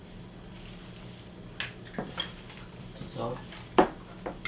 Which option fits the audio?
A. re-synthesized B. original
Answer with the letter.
B